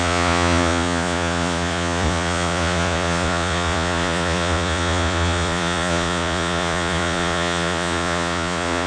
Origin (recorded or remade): remade